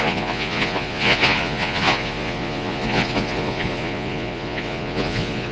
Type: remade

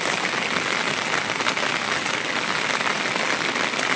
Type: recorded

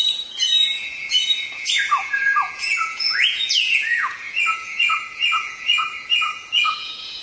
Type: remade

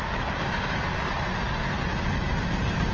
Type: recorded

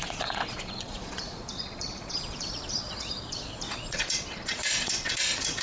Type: remade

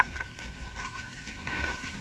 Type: remade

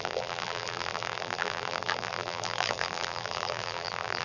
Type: remade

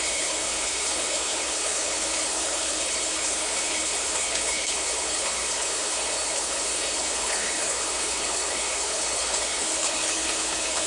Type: remade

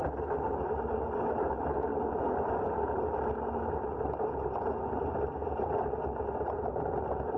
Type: recorded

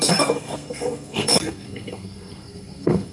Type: remade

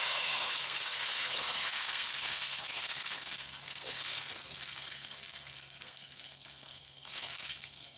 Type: remade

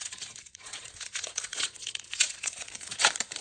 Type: remade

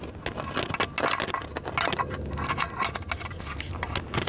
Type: recorded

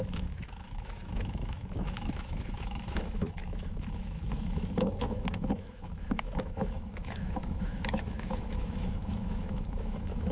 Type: remade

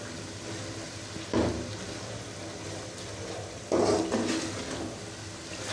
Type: recorded